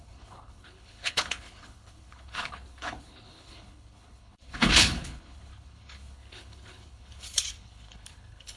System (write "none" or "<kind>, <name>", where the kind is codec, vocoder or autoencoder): codec, HILCodec